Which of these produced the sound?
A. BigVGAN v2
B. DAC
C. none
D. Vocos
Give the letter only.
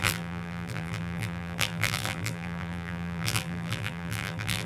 A